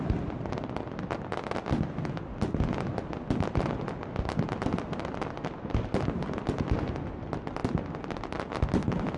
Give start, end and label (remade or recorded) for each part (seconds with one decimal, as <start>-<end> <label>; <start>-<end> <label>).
0.0-9.2 recorded